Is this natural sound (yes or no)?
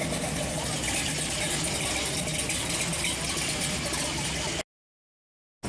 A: yes